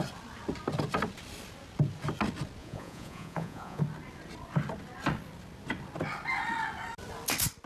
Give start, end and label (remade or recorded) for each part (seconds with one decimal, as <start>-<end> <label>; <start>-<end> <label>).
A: 0.0-2.6 recorded; 2.6-3.8 remade; 3.8-7.7 recorded